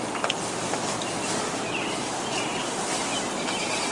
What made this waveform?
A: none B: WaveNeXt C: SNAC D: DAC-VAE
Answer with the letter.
A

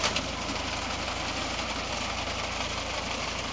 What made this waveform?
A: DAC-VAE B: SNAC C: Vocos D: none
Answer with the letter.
D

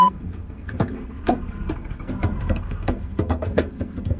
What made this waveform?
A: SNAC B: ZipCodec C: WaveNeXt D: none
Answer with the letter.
A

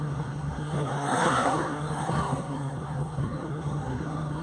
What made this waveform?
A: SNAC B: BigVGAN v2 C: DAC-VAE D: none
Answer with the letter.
A